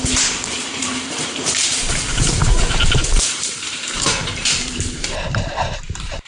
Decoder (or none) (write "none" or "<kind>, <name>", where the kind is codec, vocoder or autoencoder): vocoder, BigVGAN v2